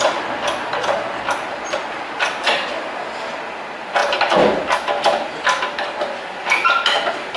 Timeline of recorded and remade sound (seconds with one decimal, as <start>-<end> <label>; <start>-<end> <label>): 0.0-7.4 recorded